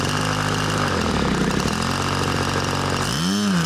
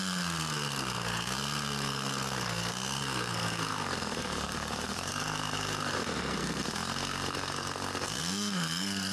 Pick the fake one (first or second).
second